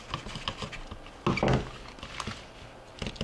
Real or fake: real